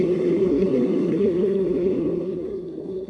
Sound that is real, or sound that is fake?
fake